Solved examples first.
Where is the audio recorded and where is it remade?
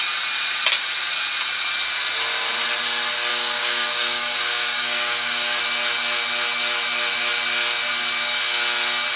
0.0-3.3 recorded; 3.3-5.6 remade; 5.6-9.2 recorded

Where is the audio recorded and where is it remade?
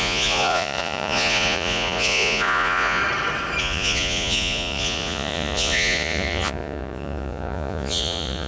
0.0-3.0 remade; 3.0-3.6 recorded; 3.6-8.5 remade